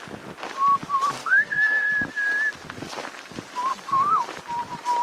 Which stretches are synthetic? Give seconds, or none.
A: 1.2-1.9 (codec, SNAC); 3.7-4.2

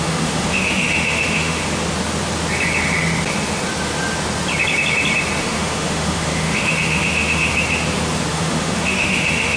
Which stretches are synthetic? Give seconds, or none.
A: 0.0-1.6 (autoencoder, DAC-VAE); 5.4-7.5; 8.3-9.6

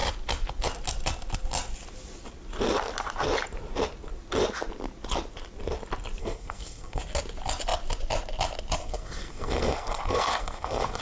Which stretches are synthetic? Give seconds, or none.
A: 6.2-7.0 (codec, SNAC); 8.8-11.0